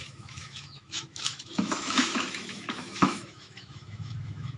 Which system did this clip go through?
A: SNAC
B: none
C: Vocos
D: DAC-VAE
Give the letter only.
D